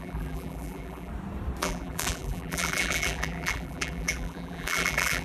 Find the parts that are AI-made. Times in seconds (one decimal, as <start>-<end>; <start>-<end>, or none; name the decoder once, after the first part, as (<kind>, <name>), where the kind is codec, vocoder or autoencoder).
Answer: 0.0-1.1 (vocoder, BigVGAN v2); 1.6-5.2